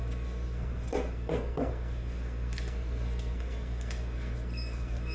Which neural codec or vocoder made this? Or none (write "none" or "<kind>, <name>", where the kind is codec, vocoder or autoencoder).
codec, SNAC